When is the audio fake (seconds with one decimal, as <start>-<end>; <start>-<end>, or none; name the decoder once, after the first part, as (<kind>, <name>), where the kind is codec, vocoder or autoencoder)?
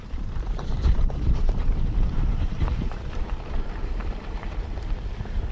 0.0-5.5 (vocoder, BigVGAN v2)